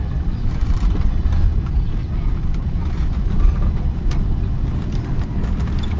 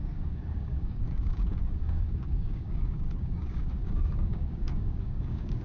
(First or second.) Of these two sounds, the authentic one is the first